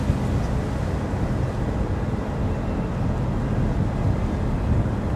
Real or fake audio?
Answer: real